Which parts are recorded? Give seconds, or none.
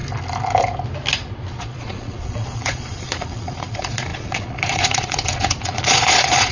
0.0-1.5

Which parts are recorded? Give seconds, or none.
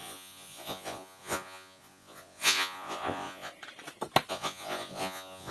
3.5-4.3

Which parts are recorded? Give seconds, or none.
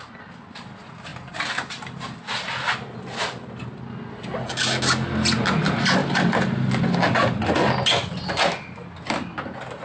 0.0-9.8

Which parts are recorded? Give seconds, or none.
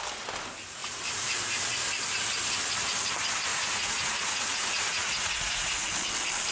0.0-3.5; 5.9-6.5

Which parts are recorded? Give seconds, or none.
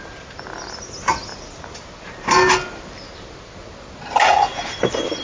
0.0-5.2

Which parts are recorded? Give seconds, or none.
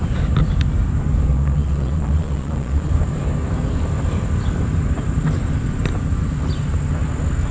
0.0-1.3; 2.9-7.5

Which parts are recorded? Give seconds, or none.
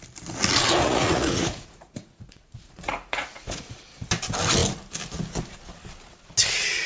0.0-0.8; 3.8-6.9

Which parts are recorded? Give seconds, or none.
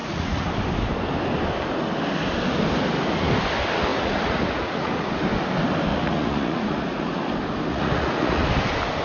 0.5-3.9; 5.1-5.9; 7.2-7.7; 8.4-9.0